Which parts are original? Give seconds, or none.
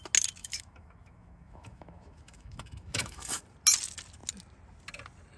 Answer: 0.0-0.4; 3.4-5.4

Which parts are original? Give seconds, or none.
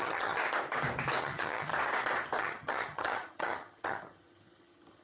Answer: 0.4-1.2; 1.7-2.4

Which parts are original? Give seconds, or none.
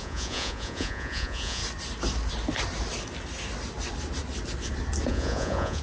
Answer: 1.6-5.1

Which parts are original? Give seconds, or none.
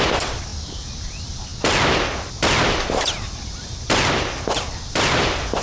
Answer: 0.5-1.1; 1.5-4.9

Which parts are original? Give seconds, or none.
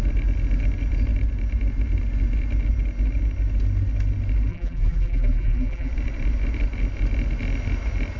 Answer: 0.0-4.5; 5.9-8.2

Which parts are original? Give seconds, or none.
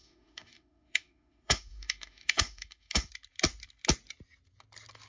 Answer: 3.1-5.1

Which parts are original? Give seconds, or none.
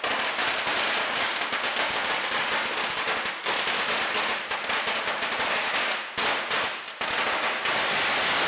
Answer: 0.0-0.4; 2.4-8.5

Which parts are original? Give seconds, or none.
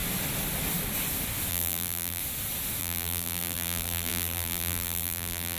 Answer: 0.0-1.5; 2.2-2.8